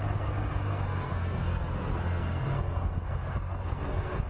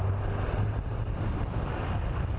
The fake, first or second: first